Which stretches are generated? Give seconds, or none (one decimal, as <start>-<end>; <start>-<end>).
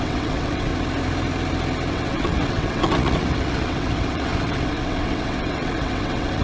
0.0-0.7; 1.9-6.4